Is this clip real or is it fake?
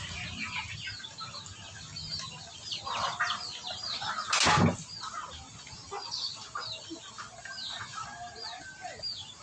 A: real